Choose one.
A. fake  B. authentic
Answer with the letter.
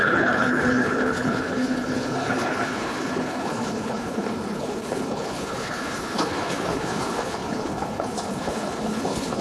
A